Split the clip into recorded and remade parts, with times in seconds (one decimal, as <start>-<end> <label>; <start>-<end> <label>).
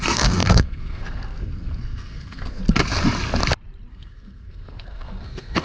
0.0-2.6 remade; 2.6-3.9 recorded; 3.9-5.6 remade